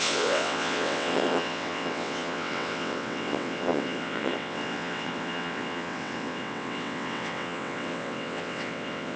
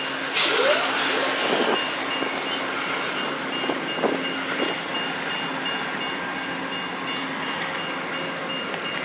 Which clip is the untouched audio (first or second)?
second